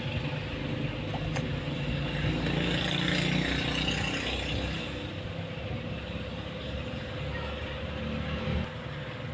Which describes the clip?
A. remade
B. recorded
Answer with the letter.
B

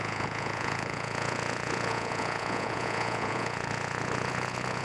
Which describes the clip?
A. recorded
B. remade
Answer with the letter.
B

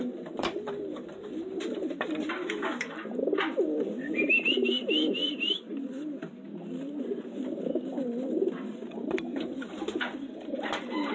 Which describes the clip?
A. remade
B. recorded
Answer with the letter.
B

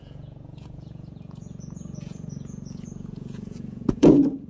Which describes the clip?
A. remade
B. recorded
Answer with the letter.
A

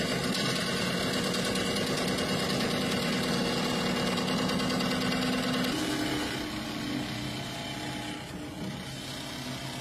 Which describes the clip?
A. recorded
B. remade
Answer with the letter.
A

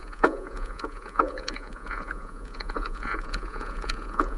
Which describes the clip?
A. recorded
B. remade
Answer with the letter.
B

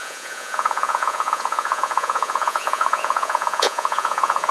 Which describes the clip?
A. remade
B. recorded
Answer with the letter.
A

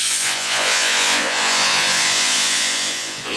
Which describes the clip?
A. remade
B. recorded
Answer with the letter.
A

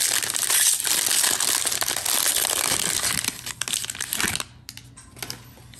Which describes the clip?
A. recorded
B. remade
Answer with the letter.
A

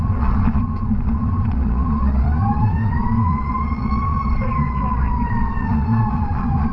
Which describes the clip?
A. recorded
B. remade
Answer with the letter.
B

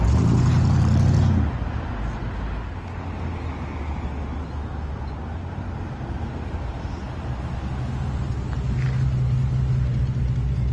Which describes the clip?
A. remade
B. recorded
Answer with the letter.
B